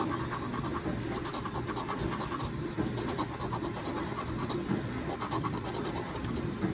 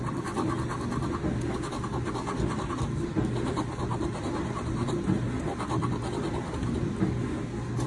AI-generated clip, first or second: first